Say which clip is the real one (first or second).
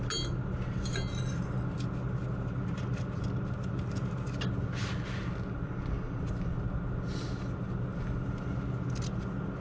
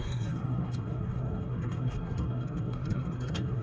first